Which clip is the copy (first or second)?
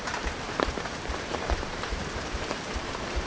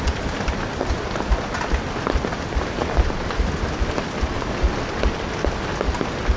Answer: first